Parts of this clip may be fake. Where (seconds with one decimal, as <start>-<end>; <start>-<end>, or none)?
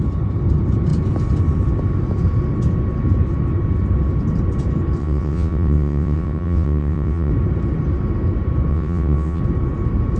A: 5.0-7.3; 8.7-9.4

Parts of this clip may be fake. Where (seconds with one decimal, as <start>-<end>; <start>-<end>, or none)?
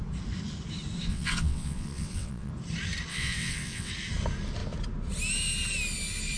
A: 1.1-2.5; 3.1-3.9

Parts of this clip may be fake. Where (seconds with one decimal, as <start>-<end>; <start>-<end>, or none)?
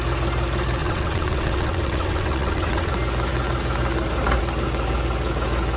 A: 0.8-2.9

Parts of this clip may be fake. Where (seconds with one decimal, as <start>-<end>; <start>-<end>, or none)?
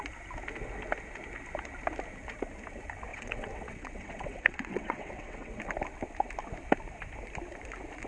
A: 3.1-5.6